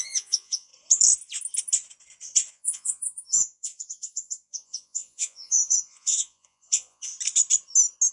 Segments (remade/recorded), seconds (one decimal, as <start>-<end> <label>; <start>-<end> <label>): 0.0-0.7 remade; 0.7-2.5 recorded; 2.5-7.1 remade; 7.1-8.1 recorded